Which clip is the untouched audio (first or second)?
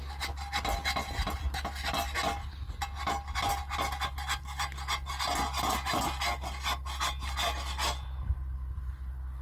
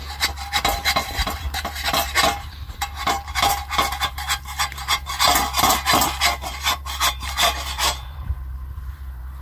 first